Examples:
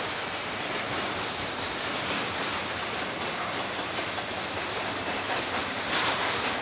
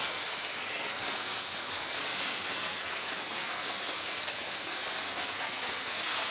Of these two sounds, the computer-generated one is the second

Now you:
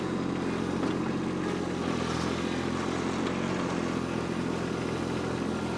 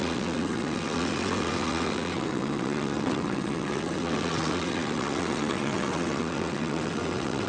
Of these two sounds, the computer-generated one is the second